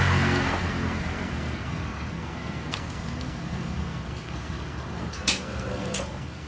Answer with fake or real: fake